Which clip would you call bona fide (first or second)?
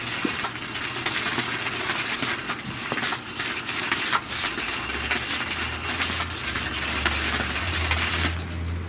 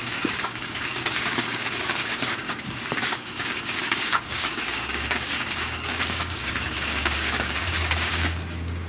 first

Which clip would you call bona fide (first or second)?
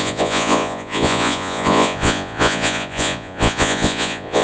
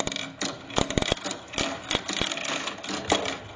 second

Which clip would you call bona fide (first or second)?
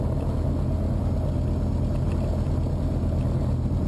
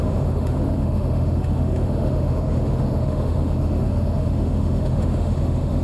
first